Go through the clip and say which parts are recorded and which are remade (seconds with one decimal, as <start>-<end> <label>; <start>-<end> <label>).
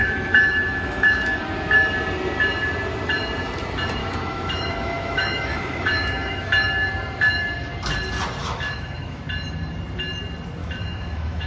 0.0-1.4 remade; 1.4-4.0 recorded; 4.0-6.5 remade; 6.5-8.4 recorded; 8.4-9.2 remade; 9.2-10.6 recorded; 10.6-11.5 remade